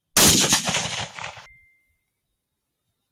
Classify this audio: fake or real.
real